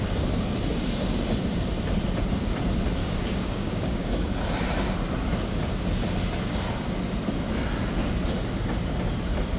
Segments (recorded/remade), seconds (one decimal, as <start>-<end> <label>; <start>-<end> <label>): 0.0-3.0 recorded; 3.0-4.3 remade; 4.3-9.6 recorded